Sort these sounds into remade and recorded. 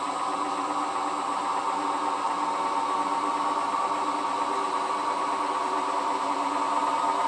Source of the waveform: recorded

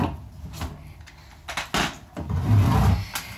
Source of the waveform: recorded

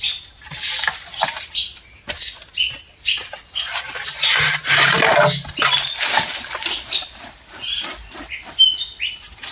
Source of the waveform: recorded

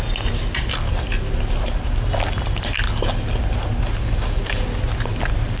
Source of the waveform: recorded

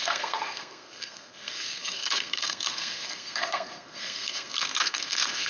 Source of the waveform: remade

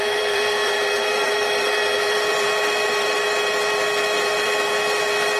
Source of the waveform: remade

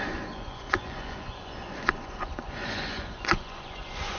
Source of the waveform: remade